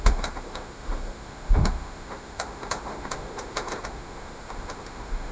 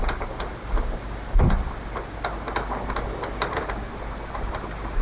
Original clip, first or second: second